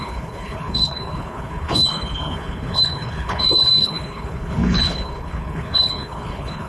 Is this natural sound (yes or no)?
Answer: no